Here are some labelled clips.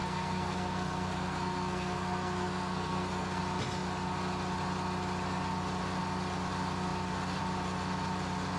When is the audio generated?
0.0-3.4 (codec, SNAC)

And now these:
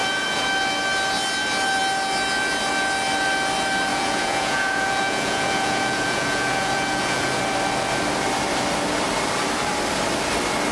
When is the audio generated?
0.0-0.5 (vocoder, Vocos); 3.9-7.4

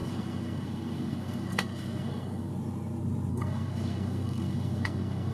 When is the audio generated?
0.0-2.5 (codec, SNAC); 3.3-5.3